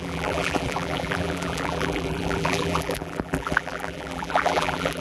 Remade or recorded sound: remade